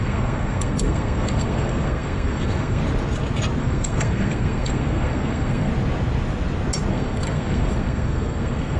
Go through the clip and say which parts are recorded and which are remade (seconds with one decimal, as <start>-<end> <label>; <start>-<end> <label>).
0.0-2.8 remade; 2.8-3.6 recorded; 3.6-5.7 remade; 5.7-6.9 recorded; 6.9-8.8 remade